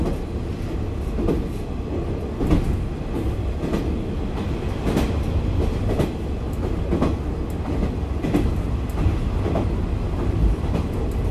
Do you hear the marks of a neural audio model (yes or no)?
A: no